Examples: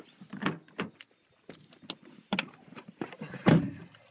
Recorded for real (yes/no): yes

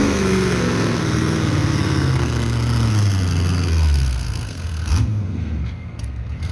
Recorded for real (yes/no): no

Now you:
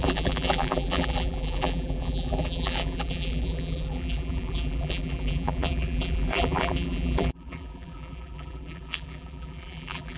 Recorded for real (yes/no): no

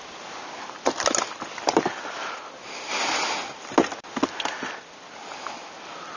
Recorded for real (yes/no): yes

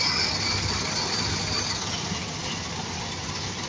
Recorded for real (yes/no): yes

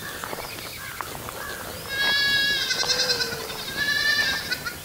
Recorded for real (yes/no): yes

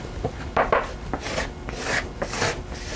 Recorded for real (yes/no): yes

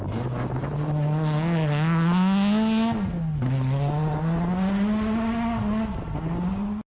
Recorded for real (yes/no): yes